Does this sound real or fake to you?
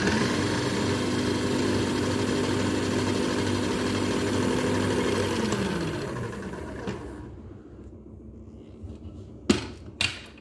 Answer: real